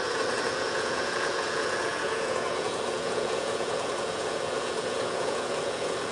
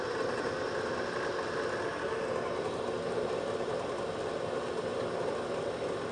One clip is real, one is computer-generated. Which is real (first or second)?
second